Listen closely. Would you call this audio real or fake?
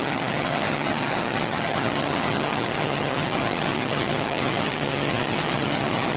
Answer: fake